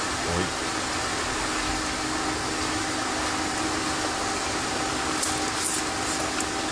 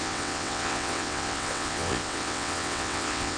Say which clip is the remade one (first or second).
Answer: second